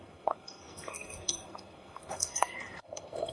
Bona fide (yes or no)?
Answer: no